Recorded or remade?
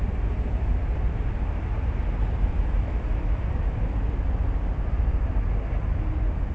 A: recorded